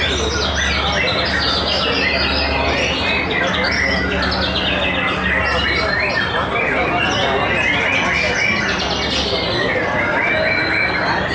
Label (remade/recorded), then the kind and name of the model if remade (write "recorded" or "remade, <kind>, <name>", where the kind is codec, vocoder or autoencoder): recorded